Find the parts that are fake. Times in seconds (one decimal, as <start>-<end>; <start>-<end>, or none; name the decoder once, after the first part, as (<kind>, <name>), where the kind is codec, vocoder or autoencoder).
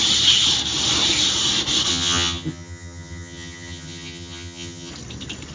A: 1.9-4.9 (vocoder, HiFi-GAN)